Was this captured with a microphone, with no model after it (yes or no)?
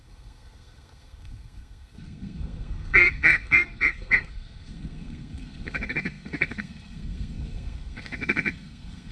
no